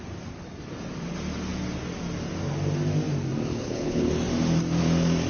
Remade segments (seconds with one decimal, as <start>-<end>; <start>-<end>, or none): 3.5-4.1